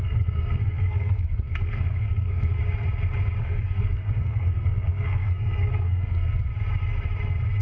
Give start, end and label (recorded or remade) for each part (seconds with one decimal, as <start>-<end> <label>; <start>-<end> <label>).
0.0-2.6 remade; 2.6-3.4 recorded; 3.4-6.5 remade; 6.5-7.6 recorded